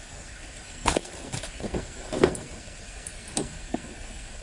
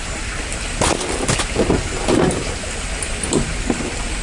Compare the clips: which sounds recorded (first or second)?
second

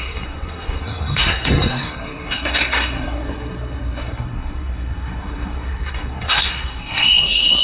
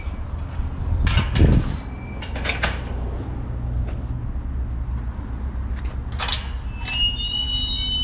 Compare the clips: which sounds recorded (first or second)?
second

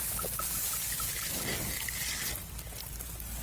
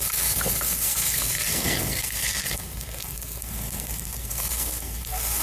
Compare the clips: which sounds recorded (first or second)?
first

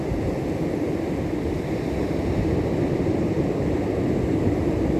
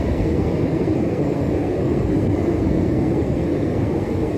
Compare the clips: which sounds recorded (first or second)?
first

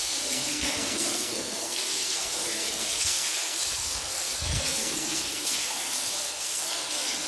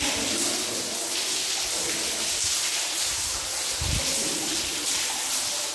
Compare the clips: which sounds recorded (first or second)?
second